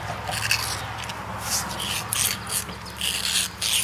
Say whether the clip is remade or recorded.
recorded